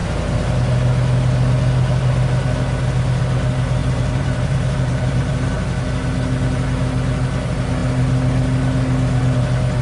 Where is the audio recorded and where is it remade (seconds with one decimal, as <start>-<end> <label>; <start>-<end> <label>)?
0.0-3.8 recorded; 3.8-5.5 remade; 5.5-9.8 recorded